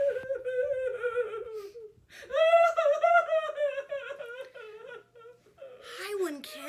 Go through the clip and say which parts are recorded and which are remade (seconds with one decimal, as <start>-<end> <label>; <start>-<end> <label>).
0.0-0.9 recorded; 0.9-1.6 remade; 1.6-2.3 recorded; 2.3-4.9 remade; 4.9-6.7 recorded